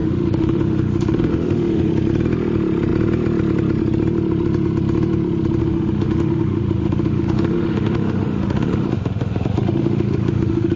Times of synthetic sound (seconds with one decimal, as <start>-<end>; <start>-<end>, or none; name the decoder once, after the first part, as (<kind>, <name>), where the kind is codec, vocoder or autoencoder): 0.0-1.9 (autoencoder, DAC-VAE); 5.6-10.8